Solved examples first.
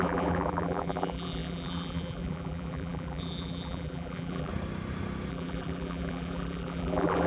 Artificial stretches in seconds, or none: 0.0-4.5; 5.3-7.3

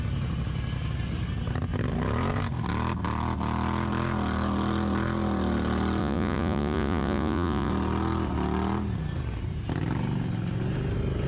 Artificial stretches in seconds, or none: 6.0-7.7

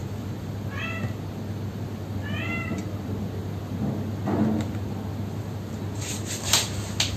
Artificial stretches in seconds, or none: none

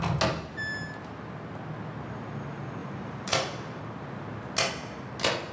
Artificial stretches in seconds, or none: 2.8-3.8

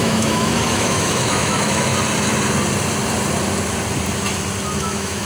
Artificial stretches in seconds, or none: 0.0-1.9; 4.8-5.3

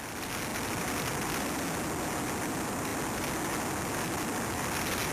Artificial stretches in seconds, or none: none